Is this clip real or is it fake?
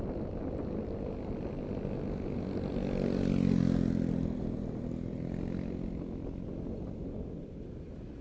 real